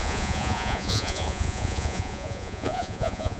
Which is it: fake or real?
fake